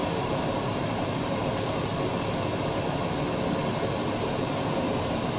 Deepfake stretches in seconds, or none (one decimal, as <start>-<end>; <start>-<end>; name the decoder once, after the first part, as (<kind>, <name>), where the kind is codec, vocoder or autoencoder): 0.0-1.9 (vocoder, BigVGAN v2); 3.6-5.4